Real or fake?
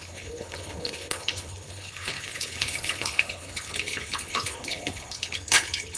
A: fake